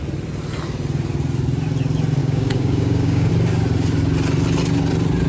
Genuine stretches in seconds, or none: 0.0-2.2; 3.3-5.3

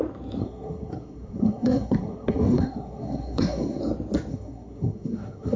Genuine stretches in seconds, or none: 0.0-0.4; 3.8-4.3

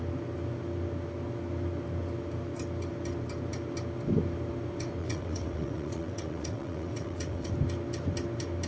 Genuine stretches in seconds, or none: 0.0-5.0; 7.5-8.7

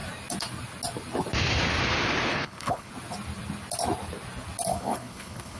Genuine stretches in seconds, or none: 0.0-2.3; 2.9-4.7

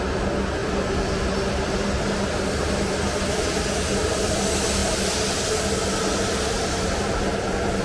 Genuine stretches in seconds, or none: 0.0-7.8

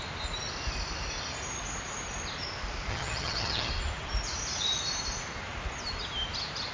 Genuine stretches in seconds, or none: 0.0-2.9; 3.7-6.7